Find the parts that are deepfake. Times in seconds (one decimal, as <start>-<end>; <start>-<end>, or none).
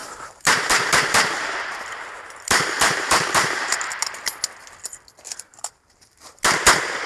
0.0-4.3; 5.5-6.6